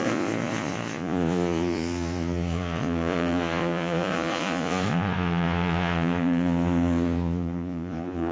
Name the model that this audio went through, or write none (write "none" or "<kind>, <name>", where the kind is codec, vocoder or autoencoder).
vocoder, Vocos